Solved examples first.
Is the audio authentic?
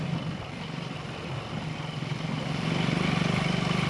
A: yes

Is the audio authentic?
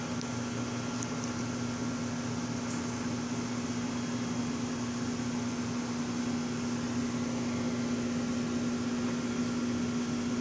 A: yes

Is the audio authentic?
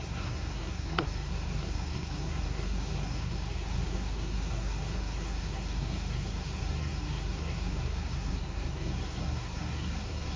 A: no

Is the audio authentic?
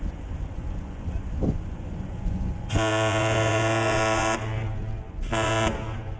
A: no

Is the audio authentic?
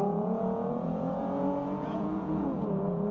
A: no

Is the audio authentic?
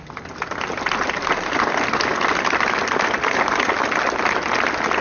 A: yes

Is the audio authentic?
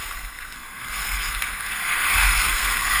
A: no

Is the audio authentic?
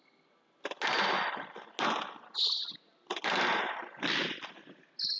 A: yes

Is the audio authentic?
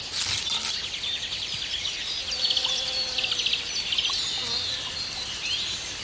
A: yes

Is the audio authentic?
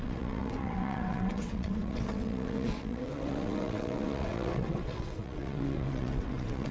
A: no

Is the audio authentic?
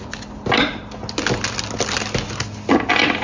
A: yes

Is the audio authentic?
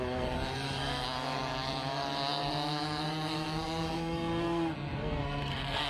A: no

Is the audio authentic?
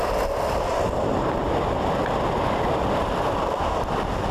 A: yes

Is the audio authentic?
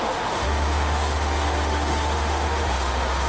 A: no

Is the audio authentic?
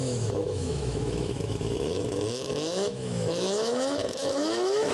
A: no